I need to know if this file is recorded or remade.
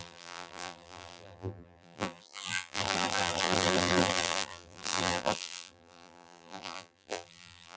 remade